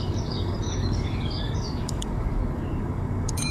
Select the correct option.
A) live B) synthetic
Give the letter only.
B